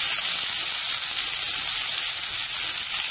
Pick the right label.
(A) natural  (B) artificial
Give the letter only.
A